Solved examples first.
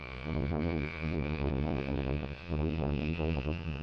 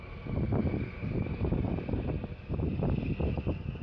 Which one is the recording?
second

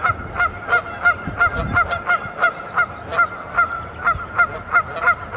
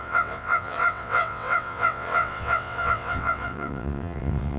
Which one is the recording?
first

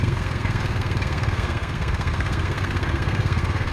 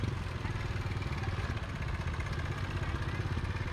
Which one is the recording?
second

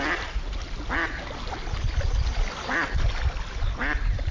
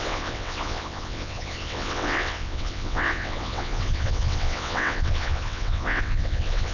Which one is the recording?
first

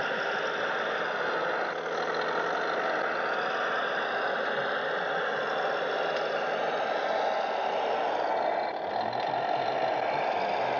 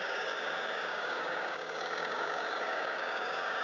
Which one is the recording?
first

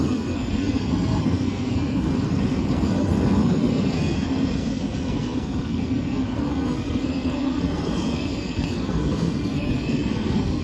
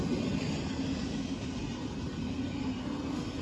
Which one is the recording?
second